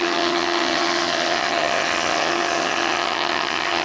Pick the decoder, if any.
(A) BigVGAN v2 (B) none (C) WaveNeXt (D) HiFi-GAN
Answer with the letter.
D